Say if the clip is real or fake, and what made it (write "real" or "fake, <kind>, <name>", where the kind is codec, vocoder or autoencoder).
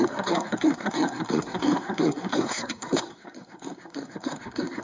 fake, codec, SNAC